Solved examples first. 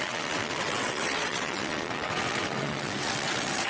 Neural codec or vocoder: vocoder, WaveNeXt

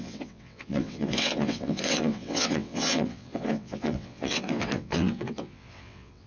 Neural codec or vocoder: vocoder, WaveNeXt